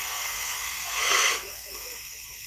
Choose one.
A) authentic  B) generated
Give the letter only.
B